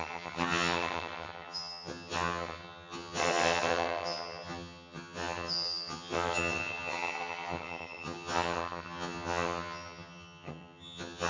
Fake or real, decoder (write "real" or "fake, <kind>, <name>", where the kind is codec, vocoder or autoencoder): fake, vocoder, HiFi-GAN